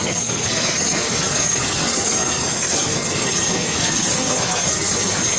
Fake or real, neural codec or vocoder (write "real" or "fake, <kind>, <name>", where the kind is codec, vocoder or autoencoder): fake, codec, SNAC